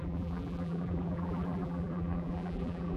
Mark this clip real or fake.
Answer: fake